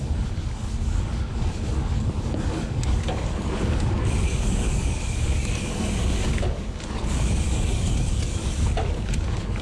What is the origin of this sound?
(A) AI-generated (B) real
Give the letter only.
A